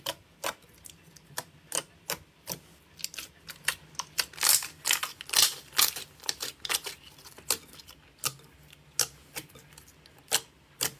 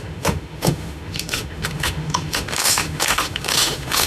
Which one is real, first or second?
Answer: first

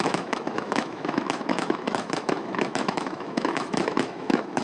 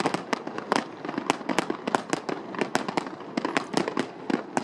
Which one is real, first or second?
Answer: second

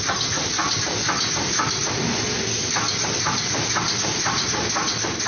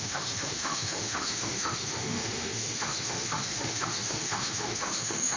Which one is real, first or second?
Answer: first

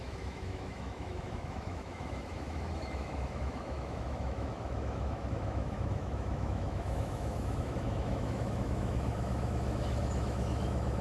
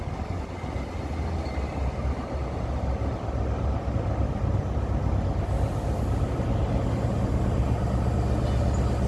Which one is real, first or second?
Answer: second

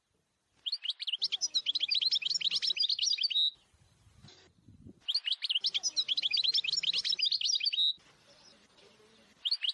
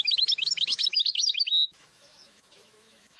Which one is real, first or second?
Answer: first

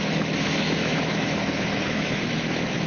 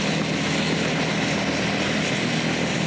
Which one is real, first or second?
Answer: second